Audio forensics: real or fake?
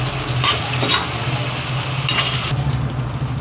real